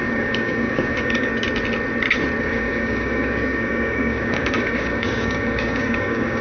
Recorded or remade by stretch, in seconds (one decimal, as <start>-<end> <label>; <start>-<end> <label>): 0.0-1.3 remade; 1.3-2.4 recorded; 2.4-6.4 remade